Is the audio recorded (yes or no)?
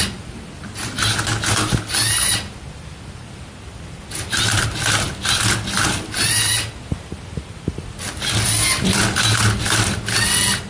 yes